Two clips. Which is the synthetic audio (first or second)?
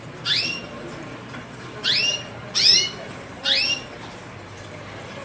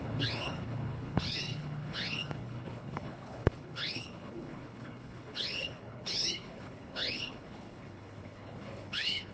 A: second